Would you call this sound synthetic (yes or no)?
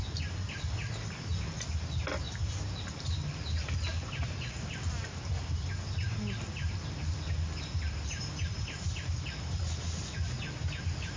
no